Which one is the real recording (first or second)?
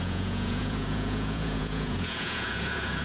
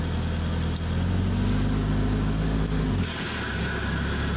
second